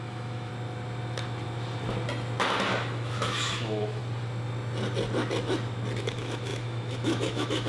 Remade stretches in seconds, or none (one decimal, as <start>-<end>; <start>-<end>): 0.0-0.5; 2.7-4.0; 6.0-7.7